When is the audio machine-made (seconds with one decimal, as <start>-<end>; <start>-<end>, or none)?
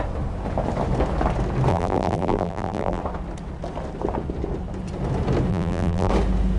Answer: 1.7-3.0; 5.5-6.1